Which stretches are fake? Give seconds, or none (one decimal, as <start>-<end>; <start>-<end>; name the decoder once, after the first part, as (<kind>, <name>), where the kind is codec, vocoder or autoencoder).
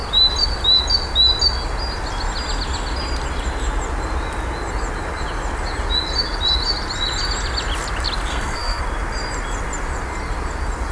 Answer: 8.3-8.8 (codec, SNAC)